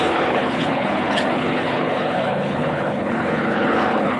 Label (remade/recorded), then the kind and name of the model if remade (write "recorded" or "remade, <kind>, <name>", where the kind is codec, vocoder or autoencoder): remade, codec, HILCodec